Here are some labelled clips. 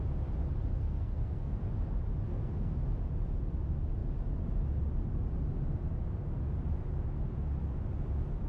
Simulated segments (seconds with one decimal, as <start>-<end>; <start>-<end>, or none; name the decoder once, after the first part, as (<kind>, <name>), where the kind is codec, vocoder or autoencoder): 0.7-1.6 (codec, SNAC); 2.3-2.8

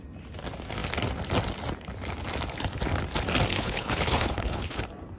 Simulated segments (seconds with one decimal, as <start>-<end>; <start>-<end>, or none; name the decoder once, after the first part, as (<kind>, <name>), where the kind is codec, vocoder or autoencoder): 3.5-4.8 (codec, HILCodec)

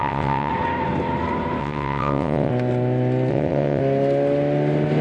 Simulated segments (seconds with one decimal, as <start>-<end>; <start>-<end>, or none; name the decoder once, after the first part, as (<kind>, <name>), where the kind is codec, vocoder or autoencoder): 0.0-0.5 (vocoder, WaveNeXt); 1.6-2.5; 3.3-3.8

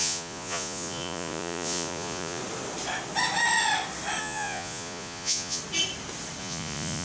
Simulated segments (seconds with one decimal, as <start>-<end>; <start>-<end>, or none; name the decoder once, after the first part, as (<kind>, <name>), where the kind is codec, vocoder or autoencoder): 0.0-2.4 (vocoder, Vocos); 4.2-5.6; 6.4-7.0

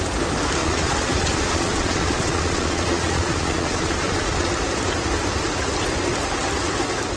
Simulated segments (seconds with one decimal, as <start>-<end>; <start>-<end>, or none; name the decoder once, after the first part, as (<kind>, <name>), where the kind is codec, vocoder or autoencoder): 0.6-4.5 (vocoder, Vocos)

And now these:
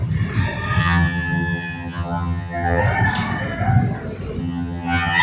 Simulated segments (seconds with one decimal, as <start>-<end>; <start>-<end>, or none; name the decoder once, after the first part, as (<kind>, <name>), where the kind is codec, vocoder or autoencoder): 0.8-2.8 (vocoder, HiFi-GAN); 4.4-5.2

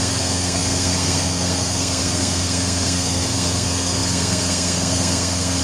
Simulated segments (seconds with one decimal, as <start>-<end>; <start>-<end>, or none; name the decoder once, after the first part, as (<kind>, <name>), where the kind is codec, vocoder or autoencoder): 0.0-5.6 (codec, SNAC)